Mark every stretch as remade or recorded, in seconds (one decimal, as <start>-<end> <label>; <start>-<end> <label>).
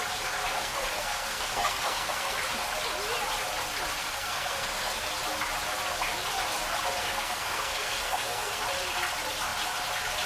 0.0-0.5 recorded; 0.5-2.4 remade; 2.4-4.0 recorded; 4.0-5.1 remade; 5.1-7.0 recorded; 7.0-8.6 remade; 8.6-10.3 recorded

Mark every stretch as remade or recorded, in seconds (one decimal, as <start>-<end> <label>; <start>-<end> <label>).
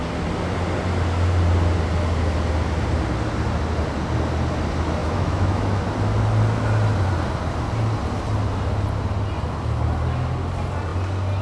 0.0-5.0 recorded; 5.0-5.8 remade; 5.8-11.4 recorded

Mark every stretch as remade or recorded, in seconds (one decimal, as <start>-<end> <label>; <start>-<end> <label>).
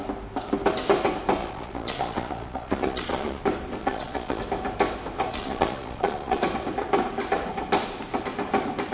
0.0-1.4 recorded; 1.4-3.4 remade; 3.4-3.8 recorded; 3.8-4.4 remade; 4.4-5.3 recorded; 5.3-6.4 remade; 6.4-8.9 recorded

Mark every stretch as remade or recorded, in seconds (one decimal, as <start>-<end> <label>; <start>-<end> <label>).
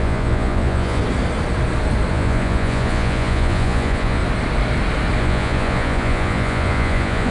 0.0-1.0 remade; 1.0-2.1 recorded; 2.1-4.2 remade; 4.2-5.2 recorded; 5.2-7.3 remade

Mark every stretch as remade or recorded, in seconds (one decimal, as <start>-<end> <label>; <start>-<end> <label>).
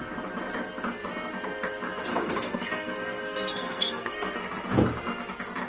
0.0-2.1 recorded; 2.1-4.4 remade; 4.4-5.7 recorded